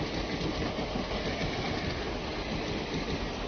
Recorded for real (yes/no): yes